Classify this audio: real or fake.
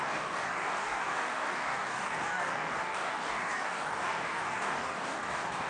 fake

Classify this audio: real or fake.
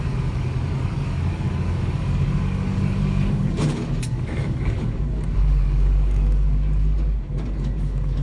fake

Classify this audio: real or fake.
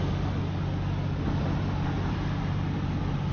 real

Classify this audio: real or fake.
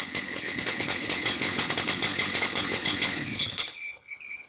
fake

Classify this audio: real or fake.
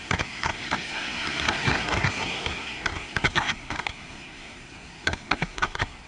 fake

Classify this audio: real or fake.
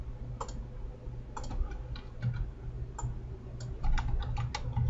real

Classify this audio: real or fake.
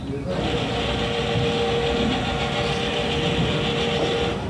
real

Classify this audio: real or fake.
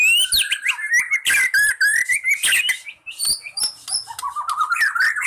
real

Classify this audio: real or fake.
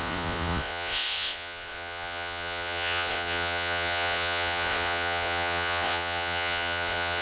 fake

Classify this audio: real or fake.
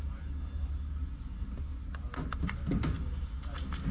real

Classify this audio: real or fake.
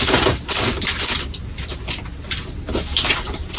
real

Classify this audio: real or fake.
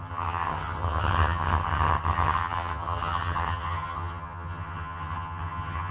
fake